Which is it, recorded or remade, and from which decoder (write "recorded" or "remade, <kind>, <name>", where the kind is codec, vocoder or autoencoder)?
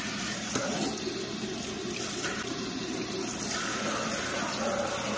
recorded